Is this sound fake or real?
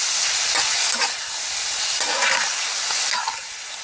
real